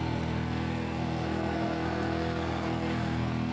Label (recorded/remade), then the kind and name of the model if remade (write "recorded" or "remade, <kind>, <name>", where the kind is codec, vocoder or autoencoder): remade, codec, SNAC